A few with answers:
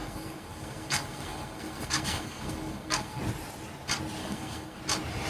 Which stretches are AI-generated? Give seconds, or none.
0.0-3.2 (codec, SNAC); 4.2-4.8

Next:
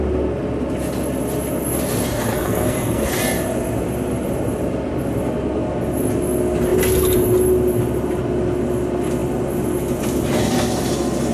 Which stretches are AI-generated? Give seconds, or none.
2.3-3.1 (codec, SNAC)

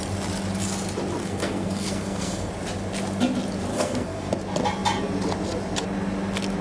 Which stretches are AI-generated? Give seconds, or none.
1.2-2.5 (codec, SNAC); 3.7-4.3

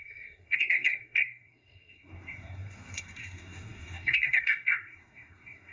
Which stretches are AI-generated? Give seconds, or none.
0.0-5.7 (codec, SNAC)